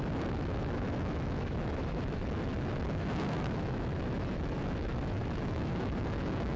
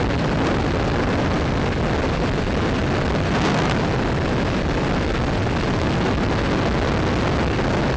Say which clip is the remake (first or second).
first